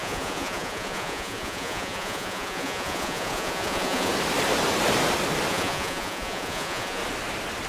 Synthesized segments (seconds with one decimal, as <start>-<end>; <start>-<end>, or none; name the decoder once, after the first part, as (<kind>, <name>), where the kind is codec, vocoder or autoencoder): 0.0-4.1 (vocoder, Vocos); 5.5-7.0